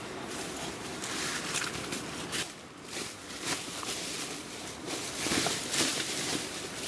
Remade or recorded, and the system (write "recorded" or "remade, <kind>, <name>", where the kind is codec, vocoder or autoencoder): remade, vocoder, BigVGAN v2